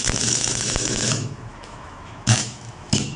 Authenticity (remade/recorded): remade